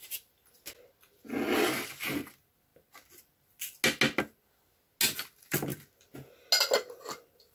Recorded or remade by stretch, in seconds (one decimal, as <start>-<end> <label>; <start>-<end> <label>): 0.0-7.5 recorded